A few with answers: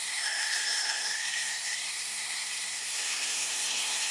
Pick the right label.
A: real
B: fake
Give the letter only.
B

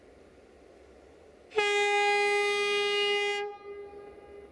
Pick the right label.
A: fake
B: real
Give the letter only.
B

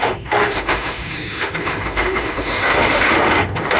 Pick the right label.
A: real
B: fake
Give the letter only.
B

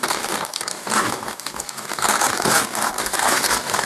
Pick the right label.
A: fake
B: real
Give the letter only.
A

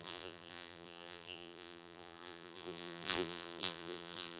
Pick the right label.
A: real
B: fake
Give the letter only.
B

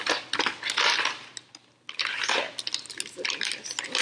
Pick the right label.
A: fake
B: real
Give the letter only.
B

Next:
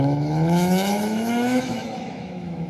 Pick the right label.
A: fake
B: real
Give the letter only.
A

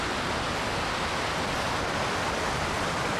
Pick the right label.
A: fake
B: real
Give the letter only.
B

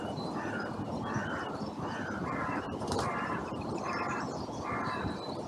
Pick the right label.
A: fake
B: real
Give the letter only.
A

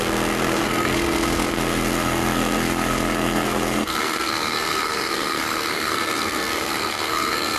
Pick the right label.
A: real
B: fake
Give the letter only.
B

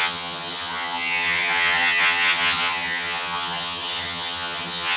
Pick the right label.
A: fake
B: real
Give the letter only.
A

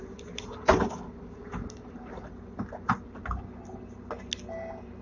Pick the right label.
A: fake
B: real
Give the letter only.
B